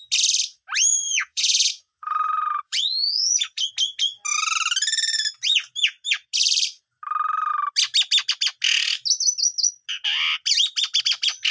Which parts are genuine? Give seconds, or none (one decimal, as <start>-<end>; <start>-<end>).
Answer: 0.0-0.9; 3.7-11.5